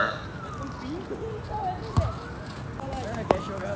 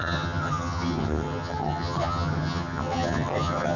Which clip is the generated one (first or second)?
second